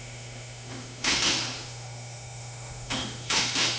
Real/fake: fake